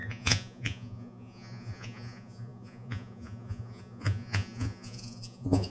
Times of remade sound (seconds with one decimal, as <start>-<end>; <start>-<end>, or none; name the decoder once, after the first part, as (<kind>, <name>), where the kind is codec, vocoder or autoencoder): 0.0-5.7 (vocoder, Vocos)